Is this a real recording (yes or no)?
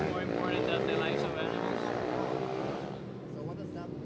yes